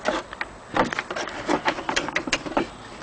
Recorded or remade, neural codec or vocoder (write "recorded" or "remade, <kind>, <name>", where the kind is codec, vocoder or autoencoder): recorded